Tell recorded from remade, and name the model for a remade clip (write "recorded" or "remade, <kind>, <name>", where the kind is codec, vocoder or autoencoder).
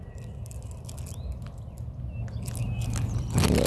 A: recorded